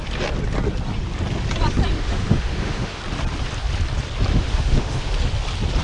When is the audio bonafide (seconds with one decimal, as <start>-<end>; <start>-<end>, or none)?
0.0-1.9; 3.0-4.3; 5.1-5.8